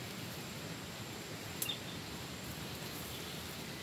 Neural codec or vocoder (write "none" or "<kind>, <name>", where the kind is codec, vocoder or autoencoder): none